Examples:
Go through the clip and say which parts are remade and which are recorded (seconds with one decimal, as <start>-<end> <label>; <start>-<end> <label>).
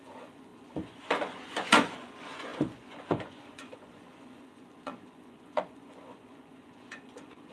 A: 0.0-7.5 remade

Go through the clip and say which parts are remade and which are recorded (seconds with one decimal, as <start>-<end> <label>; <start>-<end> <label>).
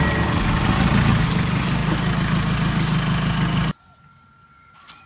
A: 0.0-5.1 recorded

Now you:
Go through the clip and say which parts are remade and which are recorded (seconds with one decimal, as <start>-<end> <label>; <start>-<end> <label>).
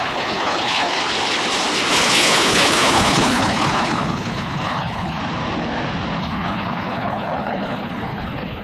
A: 0.0-1.0 remade; 1.0-1.9 recorded; 1.9-5.2 remade; 5.2-6.2 recorded; 6.2-8.6 remade